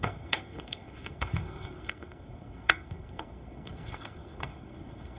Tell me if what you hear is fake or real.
fake